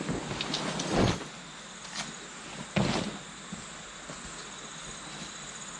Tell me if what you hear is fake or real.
real